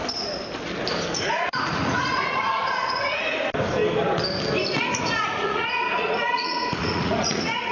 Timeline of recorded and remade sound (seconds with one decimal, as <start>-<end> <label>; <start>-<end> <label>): 0.0-1.3 recorded; 1.3-3.2 remade; 3.2-5.0 recorded; 5.0-7.7 remade